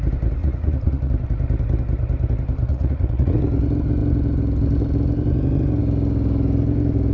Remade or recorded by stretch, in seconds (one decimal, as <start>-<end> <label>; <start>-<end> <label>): 0.0-0.4 recorded; 0.4-1.1 remade; 1.1-2.7 recorded; 2.7-3.4 remade; 3.4-7.1 recorded